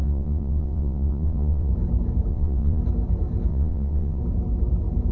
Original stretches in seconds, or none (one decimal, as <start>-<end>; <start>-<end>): 1.7-2.3; 2.8-3.5; 4.2-5.1